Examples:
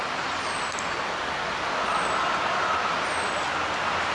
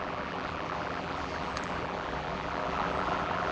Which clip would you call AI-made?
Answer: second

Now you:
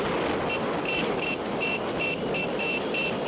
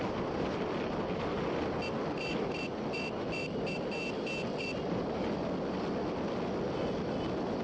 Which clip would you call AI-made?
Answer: first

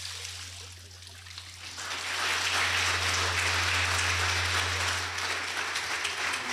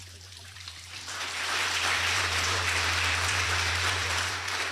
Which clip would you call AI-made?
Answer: second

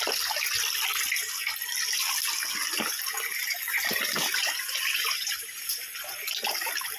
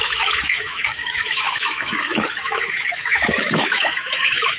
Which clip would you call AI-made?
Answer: second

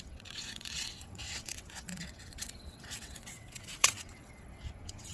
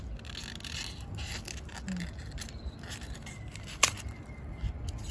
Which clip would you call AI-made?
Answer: first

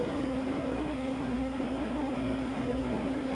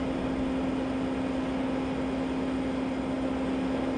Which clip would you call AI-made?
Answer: first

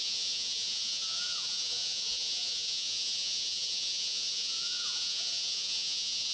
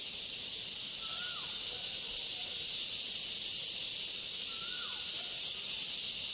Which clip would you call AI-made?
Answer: first